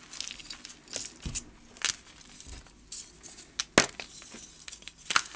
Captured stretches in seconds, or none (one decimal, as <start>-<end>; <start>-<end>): 0.0-5.4